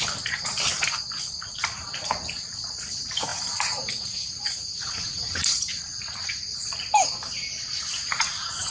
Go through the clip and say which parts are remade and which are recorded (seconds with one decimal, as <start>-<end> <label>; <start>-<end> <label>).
0.0-3.3 recorded; 3.3-5.8 remade; 5.8-8.7 recorded